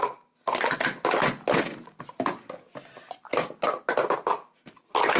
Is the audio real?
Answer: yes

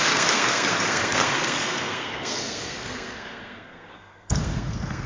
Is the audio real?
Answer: no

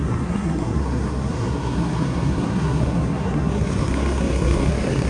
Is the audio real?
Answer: no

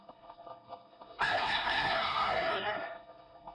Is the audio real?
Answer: no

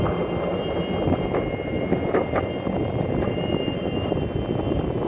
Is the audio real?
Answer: yes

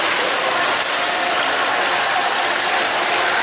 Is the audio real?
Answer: yes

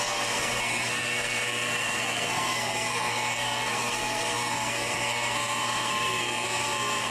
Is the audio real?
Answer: no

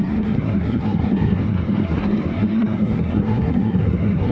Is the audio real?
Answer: no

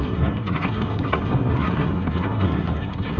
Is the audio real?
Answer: no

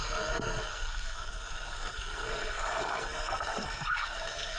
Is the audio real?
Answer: no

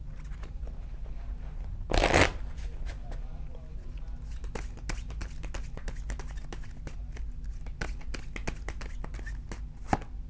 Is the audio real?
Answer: yes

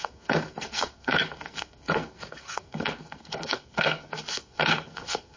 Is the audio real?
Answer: no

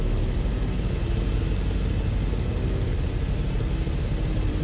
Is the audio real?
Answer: yes